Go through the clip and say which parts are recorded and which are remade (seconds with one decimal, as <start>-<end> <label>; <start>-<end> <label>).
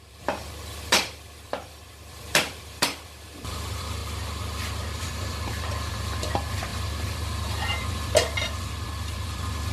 0.0-4.0 remade; 4.0-5.0 recorded; 5.0-9.7 remade